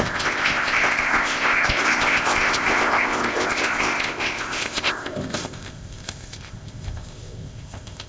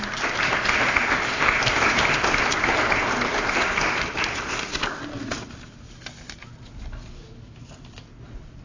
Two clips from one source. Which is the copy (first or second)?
first